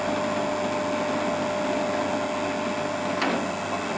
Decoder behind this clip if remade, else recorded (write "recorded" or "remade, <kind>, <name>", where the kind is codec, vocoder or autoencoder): recorded